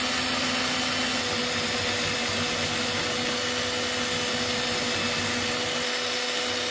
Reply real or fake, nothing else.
real